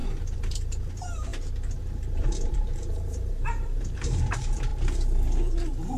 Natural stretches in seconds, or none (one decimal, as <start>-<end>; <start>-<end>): 1.3-1.8; 4.7-6.0